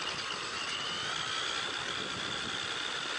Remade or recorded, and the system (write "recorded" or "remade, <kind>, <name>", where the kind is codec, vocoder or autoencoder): recorded